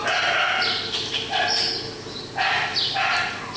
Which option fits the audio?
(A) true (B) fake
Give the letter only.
A